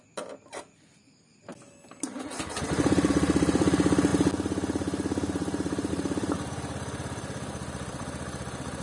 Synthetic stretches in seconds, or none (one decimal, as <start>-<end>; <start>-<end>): 0.0-1.5; 3.1-4.1; 5.9-8.8